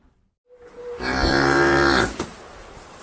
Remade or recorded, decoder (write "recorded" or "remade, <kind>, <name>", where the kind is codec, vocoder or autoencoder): remade, vocoder, BigVGAN v2